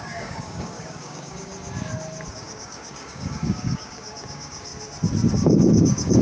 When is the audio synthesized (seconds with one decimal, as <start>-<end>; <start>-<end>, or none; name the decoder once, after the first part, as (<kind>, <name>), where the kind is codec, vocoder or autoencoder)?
0.0-1.5 (codec, DAC); 2.3-4.7; 5.3-6.2